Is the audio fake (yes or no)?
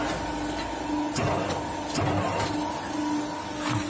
no